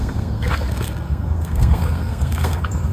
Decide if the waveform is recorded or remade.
remade